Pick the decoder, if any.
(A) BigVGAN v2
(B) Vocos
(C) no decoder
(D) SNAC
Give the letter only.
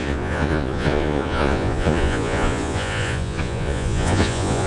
B